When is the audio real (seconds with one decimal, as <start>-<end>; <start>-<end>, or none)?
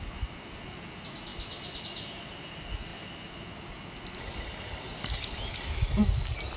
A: 0.0-6.6